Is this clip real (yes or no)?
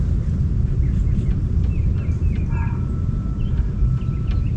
yes